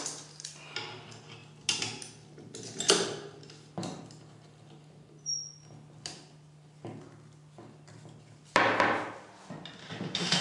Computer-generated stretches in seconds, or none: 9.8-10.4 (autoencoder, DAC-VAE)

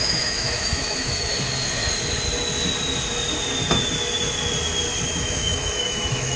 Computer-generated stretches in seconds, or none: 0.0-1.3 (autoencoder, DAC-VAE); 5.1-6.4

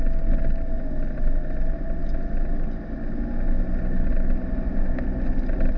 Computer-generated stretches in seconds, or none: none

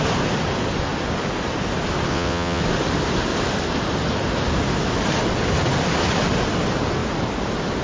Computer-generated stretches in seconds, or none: 2.1-2.6 (vocoder, WaveNeXt)